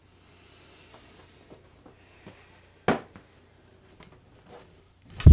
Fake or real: real